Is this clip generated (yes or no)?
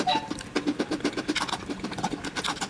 no